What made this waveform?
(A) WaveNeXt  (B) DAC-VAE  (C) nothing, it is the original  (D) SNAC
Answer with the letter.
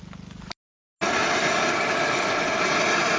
C